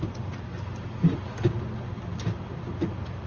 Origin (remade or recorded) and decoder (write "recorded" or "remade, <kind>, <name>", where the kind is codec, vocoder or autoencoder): recorded